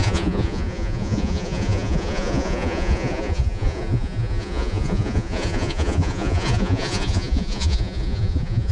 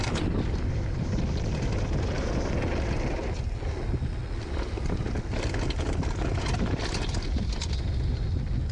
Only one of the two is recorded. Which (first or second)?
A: second